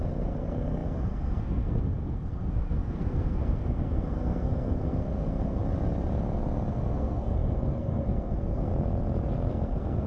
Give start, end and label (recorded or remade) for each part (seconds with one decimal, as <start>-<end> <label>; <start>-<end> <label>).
0.0-5.6 remade; 5.6-6.7 recorded; 6.7-8.7 remade; 8.7-9.5 recorded; 9.5-10.1 remade